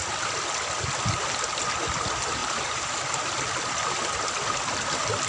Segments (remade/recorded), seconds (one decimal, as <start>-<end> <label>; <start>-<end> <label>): 0.0-2.4 recorded; 2.4-3.0 remade; 3.0-5.3 recorded